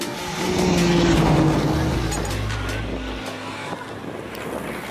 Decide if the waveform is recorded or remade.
recorded